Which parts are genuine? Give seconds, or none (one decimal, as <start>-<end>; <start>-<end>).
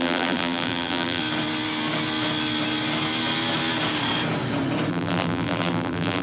1.2-4.9